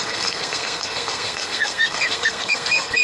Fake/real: fake